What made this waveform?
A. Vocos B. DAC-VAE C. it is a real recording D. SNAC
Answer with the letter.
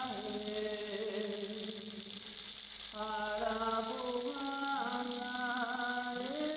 C